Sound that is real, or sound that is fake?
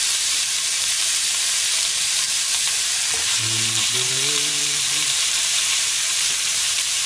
fake